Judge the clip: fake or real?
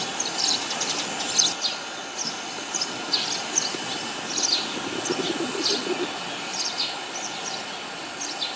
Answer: real